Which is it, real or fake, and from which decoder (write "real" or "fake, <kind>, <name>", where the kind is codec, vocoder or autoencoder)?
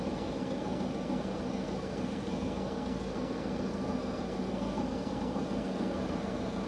fake, codec, SNAC